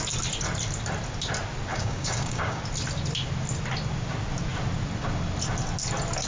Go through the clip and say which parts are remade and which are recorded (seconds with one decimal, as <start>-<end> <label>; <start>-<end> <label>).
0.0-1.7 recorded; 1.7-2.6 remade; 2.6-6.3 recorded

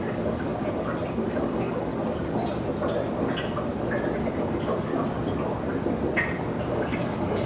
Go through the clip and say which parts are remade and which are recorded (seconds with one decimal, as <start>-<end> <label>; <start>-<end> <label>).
0.0-0.5 remade; 0.5-1.3 recorded; 1.3-1.9 remade; 1.9-4.3 recorded; 4.3-4.9 remade; 4.9-6.7 recorded; 6.7-7.5 remade

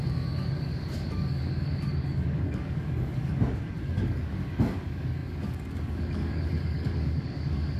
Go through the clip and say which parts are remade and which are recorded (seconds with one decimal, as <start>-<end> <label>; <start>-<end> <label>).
0.0-7.8 remade